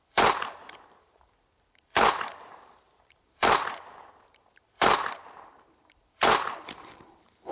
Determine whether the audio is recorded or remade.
remade